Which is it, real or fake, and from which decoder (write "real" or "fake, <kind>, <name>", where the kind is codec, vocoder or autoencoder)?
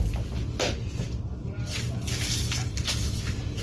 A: real